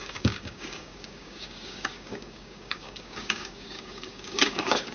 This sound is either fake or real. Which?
fake